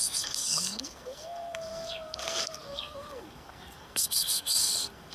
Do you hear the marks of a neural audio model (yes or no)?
yes